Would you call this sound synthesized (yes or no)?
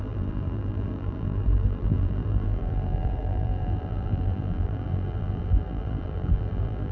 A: yes